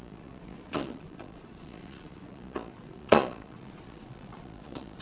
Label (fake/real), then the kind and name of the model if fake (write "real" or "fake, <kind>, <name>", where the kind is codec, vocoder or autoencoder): fake, vocoder, Vocos